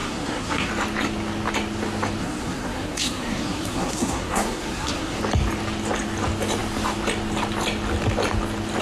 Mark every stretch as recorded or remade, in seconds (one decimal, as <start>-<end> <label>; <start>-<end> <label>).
0.0-0.7 remade; 0.7-2.2 recorded; 2.2-5.2 remade; 5.2-8.8 recorded